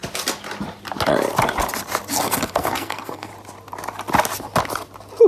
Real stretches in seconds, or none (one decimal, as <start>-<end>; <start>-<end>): 0.0-2.1; 3.3-5.3